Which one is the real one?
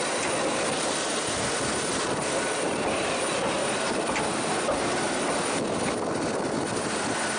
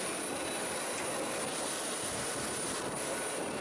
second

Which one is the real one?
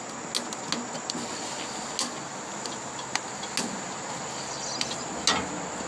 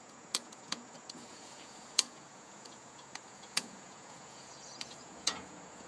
first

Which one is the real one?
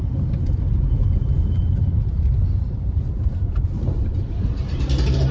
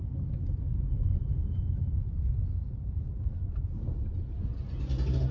second